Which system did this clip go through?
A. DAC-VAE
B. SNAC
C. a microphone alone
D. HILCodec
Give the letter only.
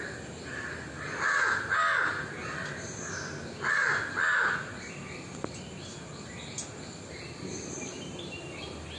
C